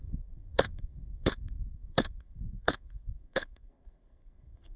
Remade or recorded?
remade